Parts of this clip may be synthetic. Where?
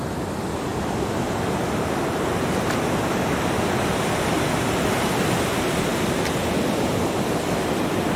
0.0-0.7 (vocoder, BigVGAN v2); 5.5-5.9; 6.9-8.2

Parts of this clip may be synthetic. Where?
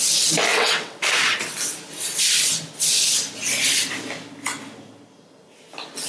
0.5-1.0 (vocoder, WaveNeXt)